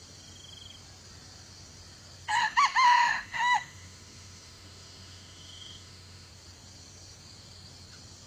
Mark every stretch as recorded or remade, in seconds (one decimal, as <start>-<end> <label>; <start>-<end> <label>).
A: 0.0-2.4 recorded; 2.4-6.3 remade; 6.3-8.3 recorded